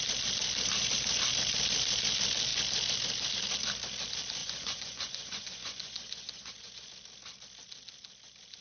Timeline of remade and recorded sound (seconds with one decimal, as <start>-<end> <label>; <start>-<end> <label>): 0.0-4.4 recorded; 4.4-6.9 remade; 6.9-8.6 recorded